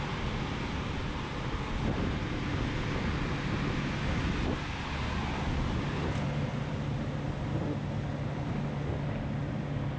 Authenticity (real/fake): real